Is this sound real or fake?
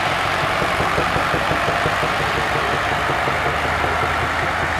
real